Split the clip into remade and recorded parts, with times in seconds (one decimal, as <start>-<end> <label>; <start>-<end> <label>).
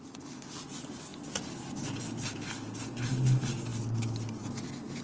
0.0-5.0 recorded